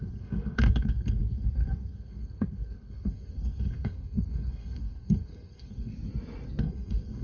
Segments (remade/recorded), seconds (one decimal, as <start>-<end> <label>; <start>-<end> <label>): 0.0-5.9 remade; 5.9-6.6 recorded; 6.6-7.2 remade